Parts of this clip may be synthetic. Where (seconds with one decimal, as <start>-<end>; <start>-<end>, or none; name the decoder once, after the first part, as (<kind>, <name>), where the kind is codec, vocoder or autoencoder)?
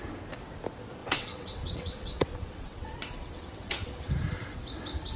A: 1.0-4.1 (vocoder, WaveNeXt)